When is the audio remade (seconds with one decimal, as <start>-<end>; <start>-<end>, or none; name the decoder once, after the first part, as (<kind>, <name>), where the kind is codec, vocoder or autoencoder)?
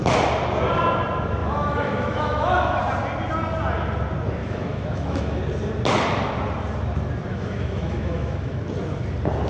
1.4-2.8 (autoencoder, DAC-VAE); 4.4-5.4; 7.3-8.6